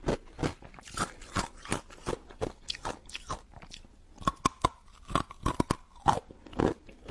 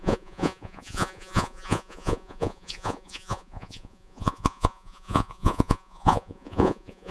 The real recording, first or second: first